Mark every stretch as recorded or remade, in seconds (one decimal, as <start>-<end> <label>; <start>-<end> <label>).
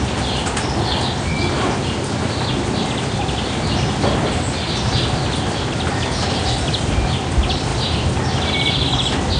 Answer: 0.0-9.4 recorded